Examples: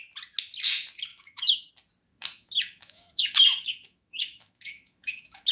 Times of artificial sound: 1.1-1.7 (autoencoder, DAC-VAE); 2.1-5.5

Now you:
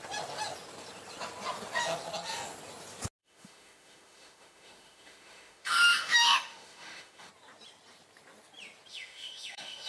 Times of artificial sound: 3.2-7.3 (autoencoder, DAC-VAE); 8.9-9.9

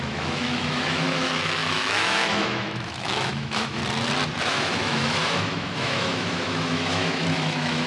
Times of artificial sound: 0.0-3.8 (autoencoder, DAC-VAE); 4.4-7.9

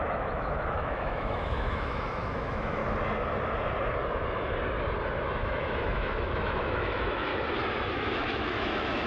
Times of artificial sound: 0.0-2.8 (autoencoder, DAC-VAE); 5.4-7.3; 7.9-9.1

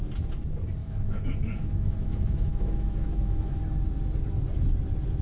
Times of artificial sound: 0.8-3.6 (autoencoder, DAC-VAE)

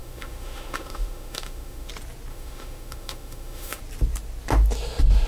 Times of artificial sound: 0.0-1.9 (autoencoder, DAC-VAE); 2.3-3.8